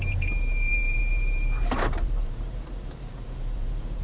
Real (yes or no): no